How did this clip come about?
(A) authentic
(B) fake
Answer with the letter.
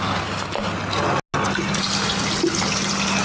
A